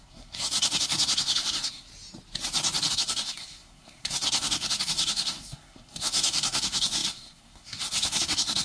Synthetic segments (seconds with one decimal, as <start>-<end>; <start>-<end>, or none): 0.0-1.9; 2.9-8.6